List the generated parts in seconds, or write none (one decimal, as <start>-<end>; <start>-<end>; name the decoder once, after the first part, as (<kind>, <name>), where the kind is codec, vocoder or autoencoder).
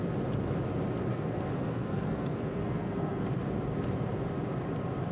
1.1-3.4 (codec, SNAC)